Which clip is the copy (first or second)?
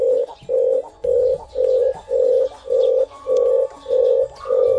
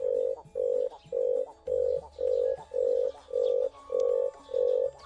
first